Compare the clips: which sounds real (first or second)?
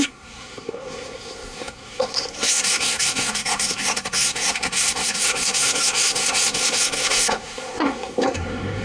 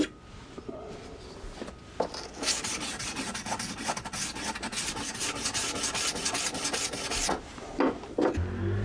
second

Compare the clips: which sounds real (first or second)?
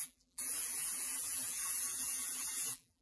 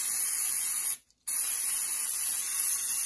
second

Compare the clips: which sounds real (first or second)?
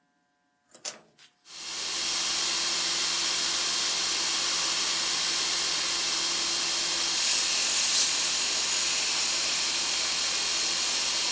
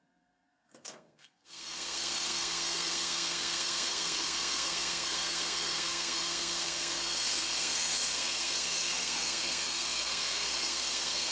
first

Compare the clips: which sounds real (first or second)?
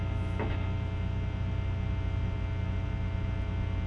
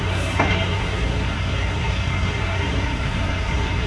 first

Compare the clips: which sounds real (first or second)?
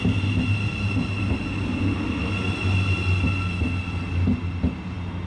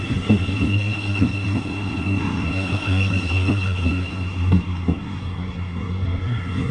first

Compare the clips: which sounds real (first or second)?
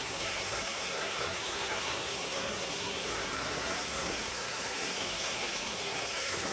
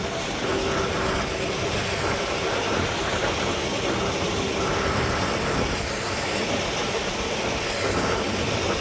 second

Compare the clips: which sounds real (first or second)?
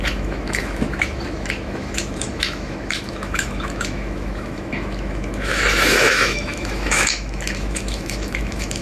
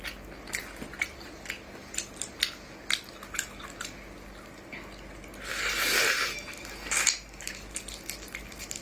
second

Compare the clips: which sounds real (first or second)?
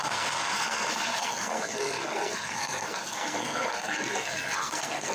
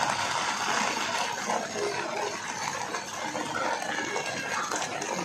second